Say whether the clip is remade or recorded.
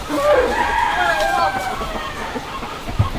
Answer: remade